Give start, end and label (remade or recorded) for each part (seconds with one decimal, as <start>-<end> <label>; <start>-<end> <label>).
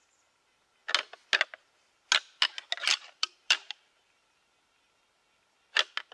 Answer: 0.0-2.9 recorded; 2.9-4.4 remade; 4.4-6.1 recorded